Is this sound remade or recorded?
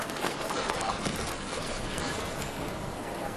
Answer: remade